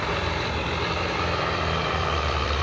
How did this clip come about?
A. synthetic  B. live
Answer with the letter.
A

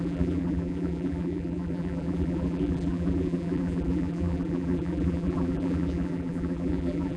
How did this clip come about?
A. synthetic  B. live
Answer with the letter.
A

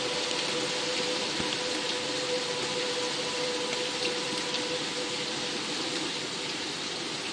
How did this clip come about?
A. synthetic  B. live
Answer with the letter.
B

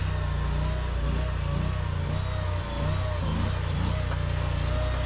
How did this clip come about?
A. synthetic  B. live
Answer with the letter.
B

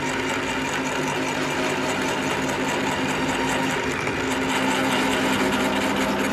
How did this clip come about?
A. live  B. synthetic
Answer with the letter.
A